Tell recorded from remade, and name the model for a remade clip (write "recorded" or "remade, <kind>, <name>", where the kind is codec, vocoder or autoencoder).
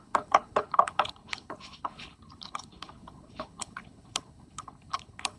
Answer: remade, codec, HILCodec